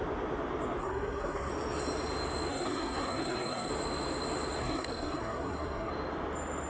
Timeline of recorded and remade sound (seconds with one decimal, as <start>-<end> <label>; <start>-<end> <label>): 0.0-0.8 recorded; 0.8-1.5 remade; 1.5-2.5 recorded; 2.5-3.7 remade; 3.7-4.6 recorded; 4.6-5.9 remade; 5.9-6.7 recorded